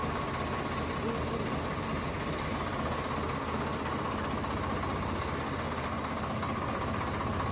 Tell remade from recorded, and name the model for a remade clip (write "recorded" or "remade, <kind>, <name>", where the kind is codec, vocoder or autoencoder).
recorded